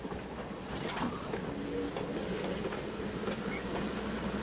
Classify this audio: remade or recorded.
recorded